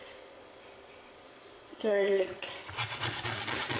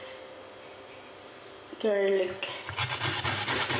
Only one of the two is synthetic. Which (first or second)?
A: first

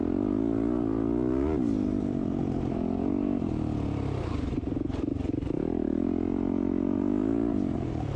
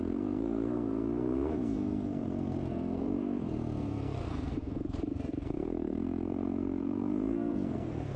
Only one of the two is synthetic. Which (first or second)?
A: second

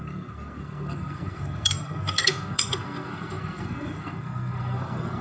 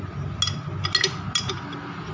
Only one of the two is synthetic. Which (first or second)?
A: first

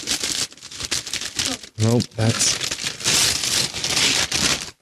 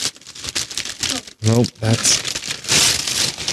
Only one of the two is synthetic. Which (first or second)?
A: second